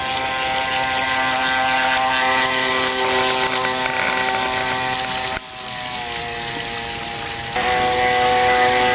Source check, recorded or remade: recorded